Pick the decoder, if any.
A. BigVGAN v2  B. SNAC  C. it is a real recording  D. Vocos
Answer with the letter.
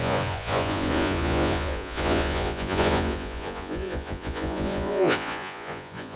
D